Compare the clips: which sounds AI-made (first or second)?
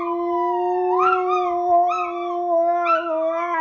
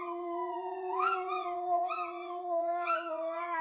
second